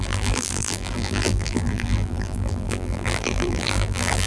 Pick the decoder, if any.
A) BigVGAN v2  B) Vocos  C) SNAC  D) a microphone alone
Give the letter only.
A